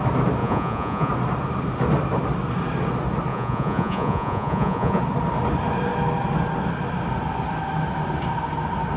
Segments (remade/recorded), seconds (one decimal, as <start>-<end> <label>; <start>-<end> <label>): 0.0-0.4 recorded; 0.4-1.1 remade; 1.1-3.3 recorded; 3.3-5.0 remade; 5.0-9.0 recorded